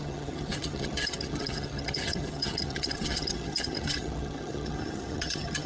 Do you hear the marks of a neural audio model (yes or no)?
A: yes